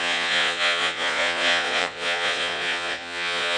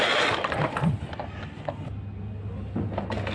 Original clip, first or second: second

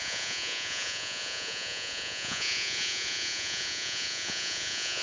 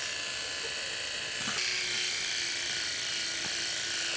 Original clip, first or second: second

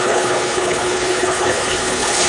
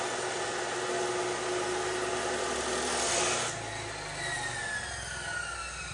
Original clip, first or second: second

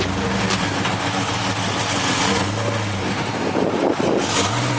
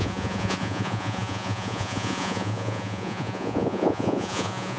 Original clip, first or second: first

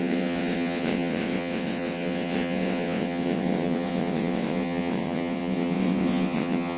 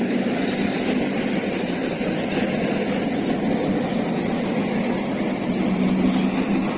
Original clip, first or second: second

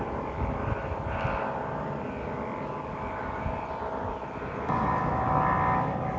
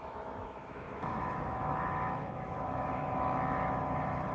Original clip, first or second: first